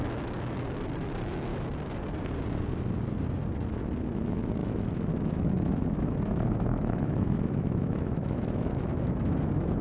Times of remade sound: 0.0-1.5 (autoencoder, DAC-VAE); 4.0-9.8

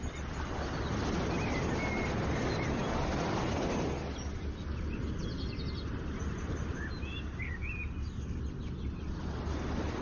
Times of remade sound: none